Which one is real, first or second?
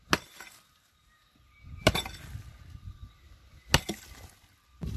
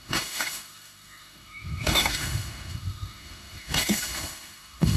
first